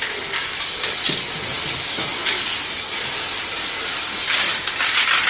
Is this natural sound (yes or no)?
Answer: yes